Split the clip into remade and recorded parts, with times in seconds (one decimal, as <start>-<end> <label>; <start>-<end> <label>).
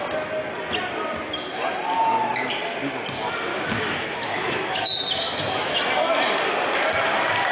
0.0-3.5 recorded; 3.5-5.8 remade; 5.8-7.5 recorded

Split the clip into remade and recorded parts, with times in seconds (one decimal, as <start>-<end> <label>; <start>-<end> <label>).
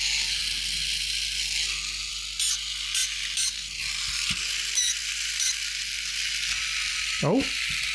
0.0-7.9 recorded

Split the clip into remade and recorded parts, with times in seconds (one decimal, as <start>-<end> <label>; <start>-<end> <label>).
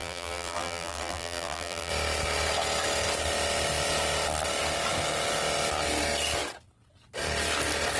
0.0-1.9 remade; 1.9-8.0 recorded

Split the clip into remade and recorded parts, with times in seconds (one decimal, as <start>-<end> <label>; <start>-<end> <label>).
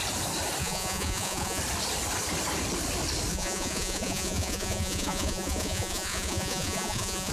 0.0-0.6 recorded; 0.6-1.6 remade; 1.6-3.3 recorded; 3.3-7.3 remade